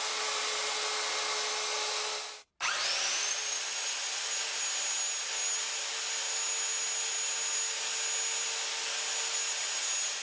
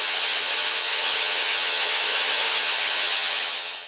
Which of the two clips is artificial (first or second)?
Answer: second